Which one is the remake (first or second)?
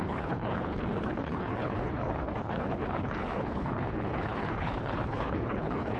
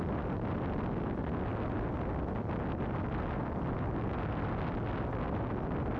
first